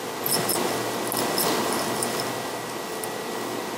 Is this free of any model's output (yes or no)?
yes